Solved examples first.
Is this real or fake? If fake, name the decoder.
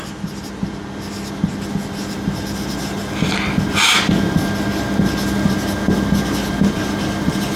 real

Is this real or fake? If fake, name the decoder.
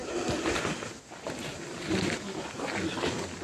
real